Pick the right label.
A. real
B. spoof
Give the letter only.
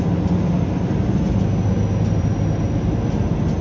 A